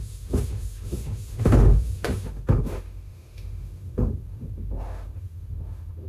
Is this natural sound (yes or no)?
no